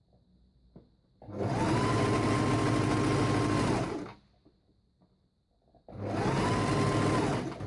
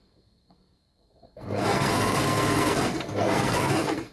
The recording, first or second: first